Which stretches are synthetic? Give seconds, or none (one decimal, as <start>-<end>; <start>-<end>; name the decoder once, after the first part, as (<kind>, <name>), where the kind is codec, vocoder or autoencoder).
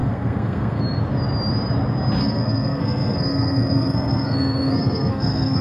0.0-0.8 (codec, SNAC); 2.2-5.6